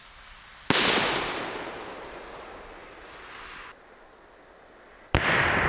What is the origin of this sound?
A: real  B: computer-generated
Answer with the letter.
A